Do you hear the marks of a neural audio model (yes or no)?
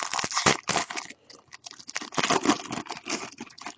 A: no